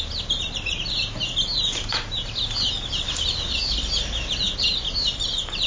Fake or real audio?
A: real